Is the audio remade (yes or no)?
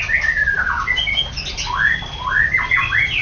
no